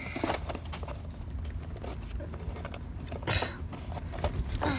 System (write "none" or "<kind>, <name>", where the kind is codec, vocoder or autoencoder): none